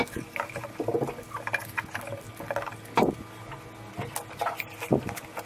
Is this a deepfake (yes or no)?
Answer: no